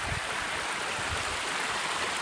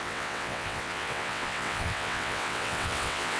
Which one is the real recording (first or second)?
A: first